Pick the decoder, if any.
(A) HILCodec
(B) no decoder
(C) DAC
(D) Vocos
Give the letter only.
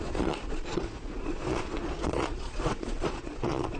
D